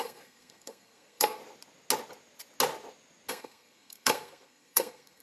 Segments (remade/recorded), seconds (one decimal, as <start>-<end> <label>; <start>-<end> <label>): 0.0-1.4 remade; 1.4-3.3 recorded; 3.3-5.2 remade